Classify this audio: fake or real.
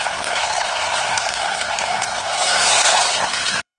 fake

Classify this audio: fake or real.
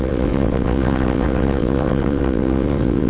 fake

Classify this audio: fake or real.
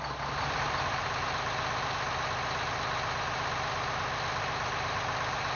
real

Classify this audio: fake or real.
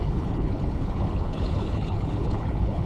fake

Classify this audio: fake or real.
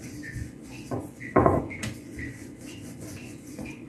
fake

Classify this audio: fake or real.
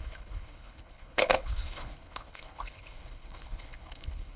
fake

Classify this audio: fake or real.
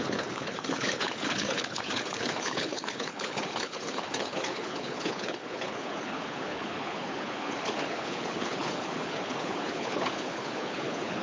fake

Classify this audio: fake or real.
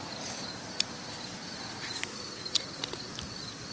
real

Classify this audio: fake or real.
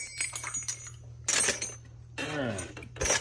real